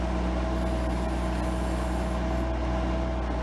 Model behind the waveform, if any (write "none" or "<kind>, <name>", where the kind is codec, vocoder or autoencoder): none